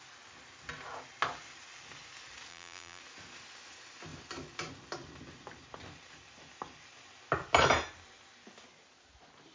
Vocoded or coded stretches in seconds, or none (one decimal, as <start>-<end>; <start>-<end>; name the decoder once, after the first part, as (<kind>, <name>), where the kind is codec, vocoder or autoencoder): 2.5-3.0 (vocoder, BigVGAN v2)